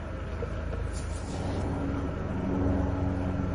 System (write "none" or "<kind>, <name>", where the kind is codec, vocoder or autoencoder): none